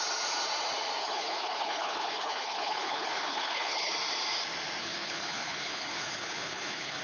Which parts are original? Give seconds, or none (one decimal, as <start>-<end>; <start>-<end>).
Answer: 0.0-1.0; 3.9-4.8